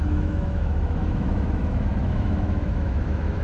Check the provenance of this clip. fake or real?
fake